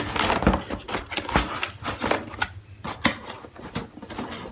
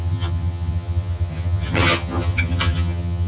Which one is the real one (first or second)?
first